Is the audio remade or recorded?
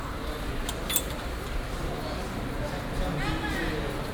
recorded